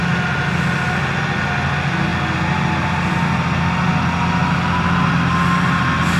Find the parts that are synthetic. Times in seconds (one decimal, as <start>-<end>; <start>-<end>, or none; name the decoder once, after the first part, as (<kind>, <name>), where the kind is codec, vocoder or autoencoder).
none

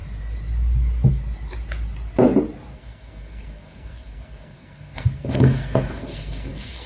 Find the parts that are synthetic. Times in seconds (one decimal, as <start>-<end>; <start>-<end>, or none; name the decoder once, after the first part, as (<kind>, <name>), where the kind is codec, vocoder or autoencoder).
2.7-6.9 (codec, SNAC)

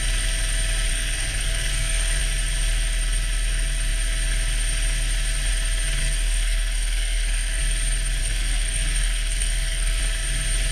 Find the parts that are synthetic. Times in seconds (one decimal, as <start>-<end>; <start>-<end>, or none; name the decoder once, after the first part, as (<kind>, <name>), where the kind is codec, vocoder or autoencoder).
0.9-2.2 (codec, SNAC); 6.0-7.6; 8.2-10.0

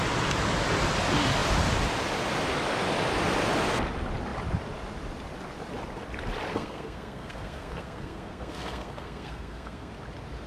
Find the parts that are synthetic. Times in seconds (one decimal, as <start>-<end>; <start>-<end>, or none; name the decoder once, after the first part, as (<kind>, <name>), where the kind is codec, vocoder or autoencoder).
6.5-9.9 (codec, SNAC)

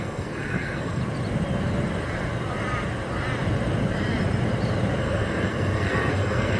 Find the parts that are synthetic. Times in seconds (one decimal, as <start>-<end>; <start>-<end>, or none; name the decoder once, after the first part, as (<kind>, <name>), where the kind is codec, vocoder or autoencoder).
0.0-1.0 (codec, SNAC); 5.0-6.6

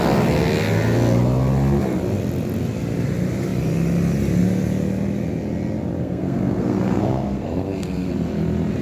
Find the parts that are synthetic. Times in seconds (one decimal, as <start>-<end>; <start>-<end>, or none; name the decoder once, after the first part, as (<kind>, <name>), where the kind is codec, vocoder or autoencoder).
6.0-8.1 (codec, SNAC)